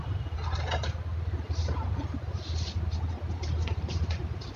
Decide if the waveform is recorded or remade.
recorded